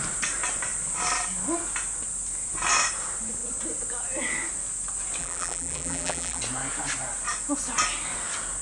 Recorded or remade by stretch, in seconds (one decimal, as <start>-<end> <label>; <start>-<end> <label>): 0.0-5.2 recorded; 5.2-6.4 remade; 6.4-8.6 recorded